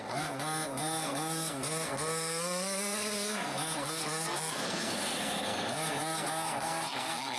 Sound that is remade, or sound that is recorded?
remade